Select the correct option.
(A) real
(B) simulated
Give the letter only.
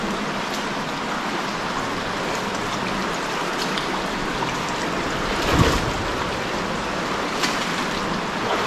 A